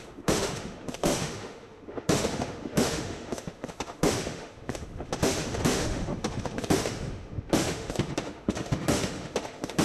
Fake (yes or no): yes